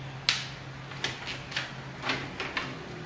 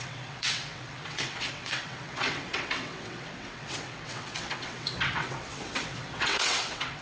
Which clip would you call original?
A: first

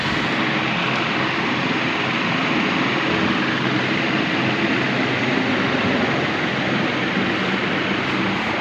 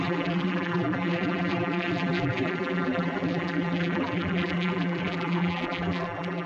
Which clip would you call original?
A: first